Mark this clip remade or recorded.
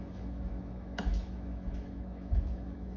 remade